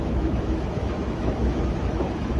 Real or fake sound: fake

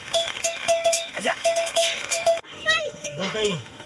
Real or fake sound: fake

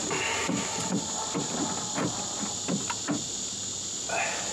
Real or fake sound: real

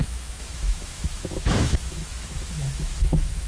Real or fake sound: fake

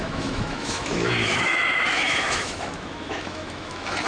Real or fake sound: fake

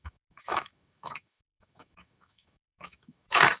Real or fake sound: fake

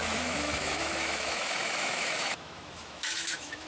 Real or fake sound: fake